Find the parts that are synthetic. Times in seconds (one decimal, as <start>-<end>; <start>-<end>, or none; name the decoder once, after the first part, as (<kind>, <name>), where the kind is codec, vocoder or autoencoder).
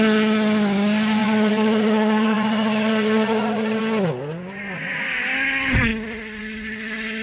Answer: 1.2-3.8 (vocoder, Vocos)